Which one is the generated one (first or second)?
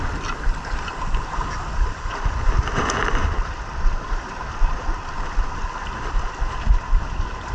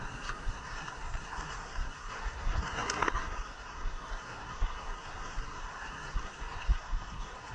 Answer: second